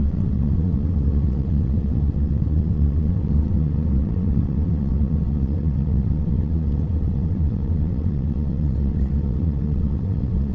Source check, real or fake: fake